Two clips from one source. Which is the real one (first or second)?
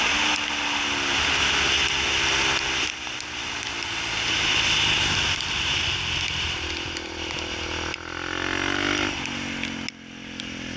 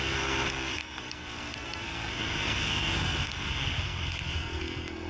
first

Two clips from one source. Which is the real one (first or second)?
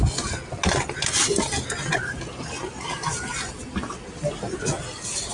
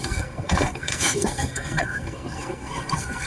first